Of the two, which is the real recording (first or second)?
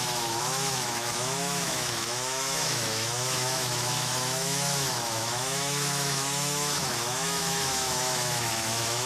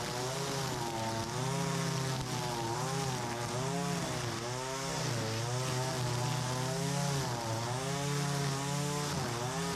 second